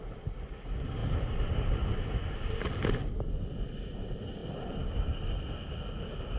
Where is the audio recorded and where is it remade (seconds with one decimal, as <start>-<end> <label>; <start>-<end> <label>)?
0.0-6.4 recorded